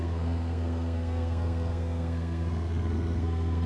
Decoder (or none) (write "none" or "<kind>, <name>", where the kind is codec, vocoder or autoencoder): codec, SNAC